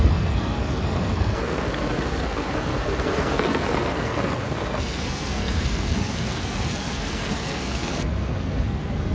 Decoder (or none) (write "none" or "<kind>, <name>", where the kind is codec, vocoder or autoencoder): codec, SNAC